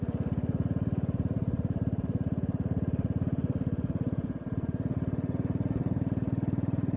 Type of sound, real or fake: real